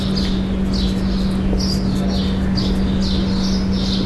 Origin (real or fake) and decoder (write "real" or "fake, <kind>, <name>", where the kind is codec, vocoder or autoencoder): real